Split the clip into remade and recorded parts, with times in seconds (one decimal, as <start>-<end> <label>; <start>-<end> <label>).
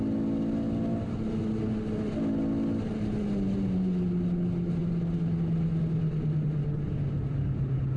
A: 0.0-8.0 recorded